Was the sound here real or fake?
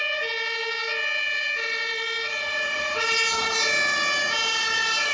real